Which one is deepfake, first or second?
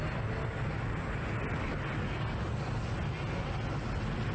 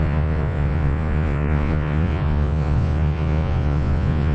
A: second